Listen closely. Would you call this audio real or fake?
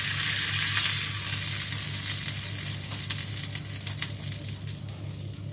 real